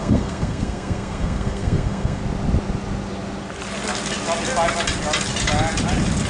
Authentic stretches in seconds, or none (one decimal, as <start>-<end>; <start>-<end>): 2.2-6.3